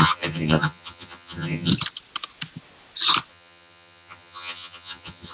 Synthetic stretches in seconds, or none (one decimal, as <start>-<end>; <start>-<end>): 0.0-1.7; 3.3-5.3

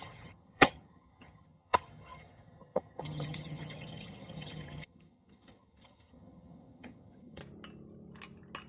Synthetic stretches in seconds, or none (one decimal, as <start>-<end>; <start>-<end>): 0.0-7.4

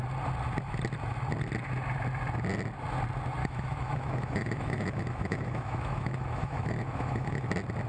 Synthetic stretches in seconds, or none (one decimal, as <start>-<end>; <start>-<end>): 3.4-7.5

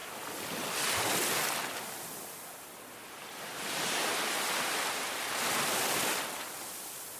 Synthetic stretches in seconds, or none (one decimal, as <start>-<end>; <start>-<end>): none

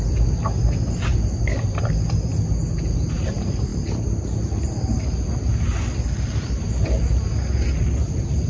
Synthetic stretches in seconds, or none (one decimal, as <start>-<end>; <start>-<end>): none

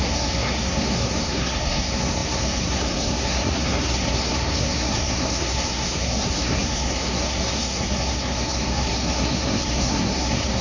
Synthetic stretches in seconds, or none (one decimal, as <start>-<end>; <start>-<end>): 0.0-10.6

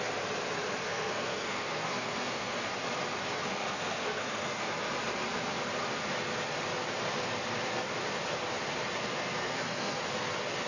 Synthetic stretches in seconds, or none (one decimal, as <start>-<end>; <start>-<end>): 0.8-2.7; 3.5-4.7; 9.0-10.0